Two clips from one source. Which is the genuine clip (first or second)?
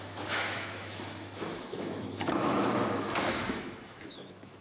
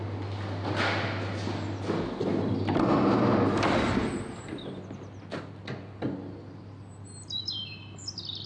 second